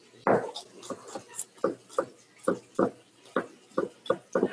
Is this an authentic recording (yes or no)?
yes